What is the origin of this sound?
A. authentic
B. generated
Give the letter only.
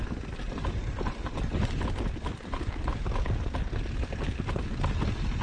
A